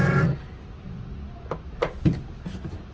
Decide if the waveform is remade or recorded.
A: recorded